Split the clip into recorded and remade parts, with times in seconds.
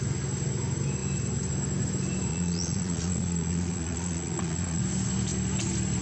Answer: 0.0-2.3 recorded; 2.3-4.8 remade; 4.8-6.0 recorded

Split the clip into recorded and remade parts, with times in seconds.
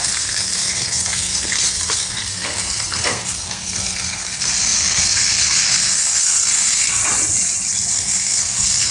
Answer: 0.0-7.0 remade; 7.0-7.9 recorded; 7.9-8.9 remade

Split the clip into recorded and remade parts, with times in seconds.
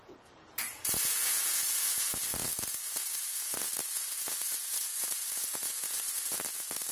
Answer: 0.0-6.9 remade